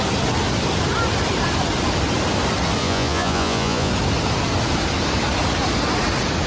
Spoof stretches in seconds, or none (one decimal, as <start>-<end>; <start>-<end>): 2.8-3.9